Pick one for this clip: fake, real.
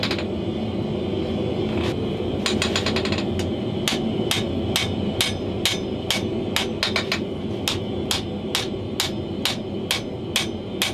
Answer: real